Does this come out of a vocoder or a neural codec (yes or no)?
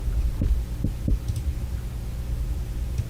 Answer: no